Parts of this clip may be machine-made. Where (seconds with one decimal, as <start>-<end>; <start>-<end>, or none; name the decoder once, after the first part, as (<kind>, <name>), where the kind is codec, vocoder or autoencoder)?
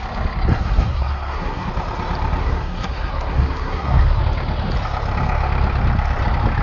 0.5-1.7 (codec, SNAC); 2.4-4.2